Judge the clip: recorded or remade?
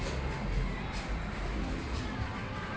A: recorded